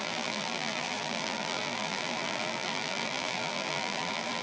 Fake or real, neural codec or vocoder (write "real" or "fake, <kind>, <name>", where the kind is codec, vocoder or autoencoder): fake, vocoder, BigVGAN v2